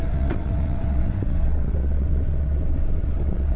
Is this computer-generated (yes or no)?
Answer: yes